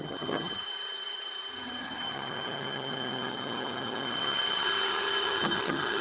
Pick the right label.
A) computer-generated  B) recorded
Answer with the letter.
A